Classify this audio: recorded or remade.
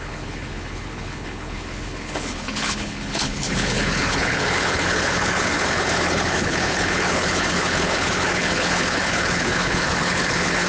remade